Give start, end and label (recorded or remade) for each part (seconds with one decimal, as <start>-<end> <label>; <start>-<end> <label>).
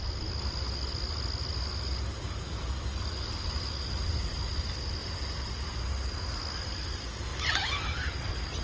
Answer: 0.0-5.0 recorded; 5.0-5.8 remade; 5.8-8.6 recorded